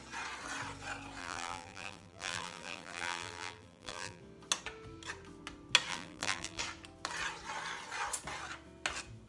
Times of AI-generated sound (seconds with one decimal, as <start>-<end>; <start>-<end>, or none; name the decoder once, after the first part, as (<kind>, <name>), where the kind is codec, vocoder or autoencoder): 1.2-4.2 (vocoder, BigVGAN v2); 5.9-6.6